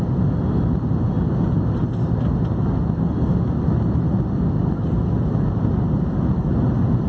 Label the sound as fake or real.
real